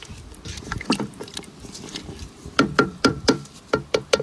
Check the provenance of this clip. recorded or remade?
remade